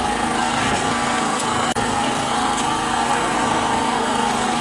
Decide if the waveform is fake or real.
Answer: fake